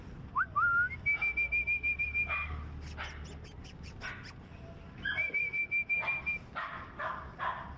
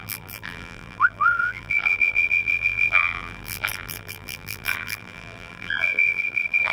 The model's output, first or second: second